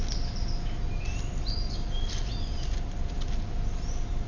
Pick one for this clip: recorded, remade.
recorded